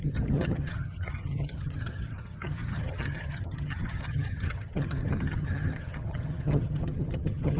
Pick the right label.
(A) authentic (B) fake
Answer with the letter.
B